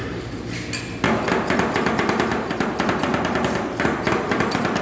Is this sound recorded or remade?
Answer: recorded